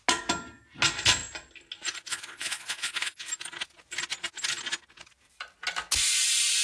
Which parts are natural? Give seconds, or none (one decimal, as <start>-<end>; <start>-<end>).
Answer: 0.0-2.1; 3.3-6.6